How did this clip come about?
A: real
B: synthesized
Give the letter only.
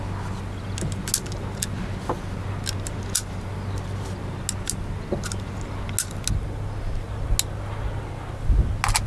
A